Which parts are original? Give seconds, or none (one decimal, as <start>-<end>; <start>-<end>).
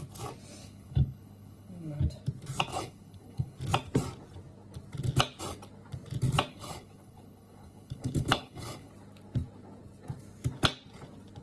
0.0-0.6; 2.0-2.7; 3.6-6.5; 8.9-11.4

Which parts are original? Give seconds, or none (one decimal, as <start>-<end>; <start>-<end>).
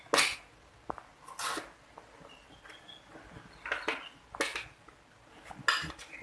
0.0-6.2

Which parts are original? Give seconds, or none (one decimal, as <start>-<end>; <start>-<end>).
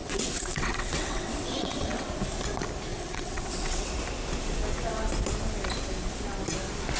2.1-2.9; 3.9-7.0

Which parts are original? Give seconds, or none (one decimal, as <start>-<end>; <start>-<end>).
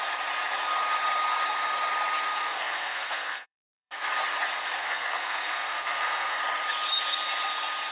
0.0-2.4; 3.9-4.8; 6.4-7.9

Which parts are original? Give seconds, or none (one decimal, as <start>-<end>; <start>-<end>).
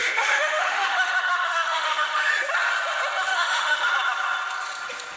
2.3-3.3; 3.9-5.2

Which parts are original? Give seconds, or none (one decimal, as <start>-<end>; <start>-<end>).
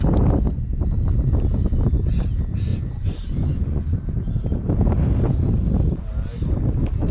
0.0-2.7; 4.0-7.1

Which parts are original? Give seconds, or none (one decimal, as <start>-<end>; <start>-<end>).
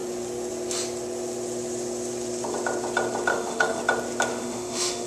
0.0-3.3; 3.8-4.3